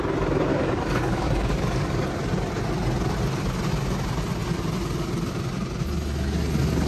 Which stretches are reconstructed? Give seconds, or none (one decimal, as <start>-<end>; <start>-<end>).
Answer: 0.5-2.0